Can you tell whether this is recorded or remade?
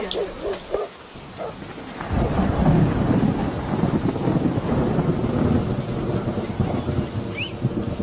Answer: recorded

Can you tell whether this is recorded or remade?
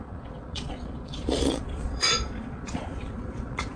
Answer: remade